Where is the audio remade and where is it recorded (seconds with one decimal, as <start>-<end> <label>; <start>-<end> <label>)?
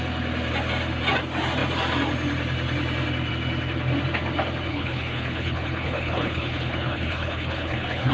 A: 0.0-4.7 recorded; 4.7-8.1 remade